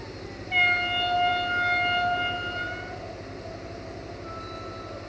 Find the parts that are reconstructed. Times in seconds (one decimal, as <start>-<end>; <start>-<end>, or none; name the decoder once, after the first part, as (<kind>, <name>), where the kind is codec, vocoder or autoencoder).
none